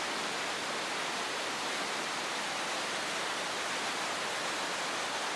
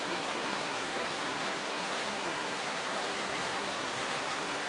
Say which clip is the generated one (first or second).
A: second